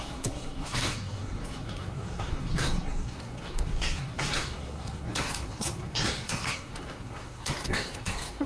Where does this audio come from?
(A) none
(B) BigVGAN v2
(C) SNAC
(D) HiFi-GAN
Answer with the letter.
C